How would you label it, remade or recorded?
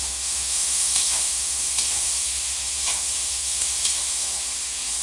remade